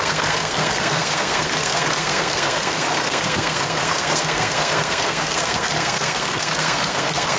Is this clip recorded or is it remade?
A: remade